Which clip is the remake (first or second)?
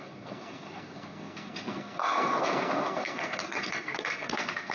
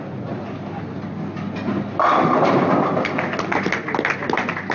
first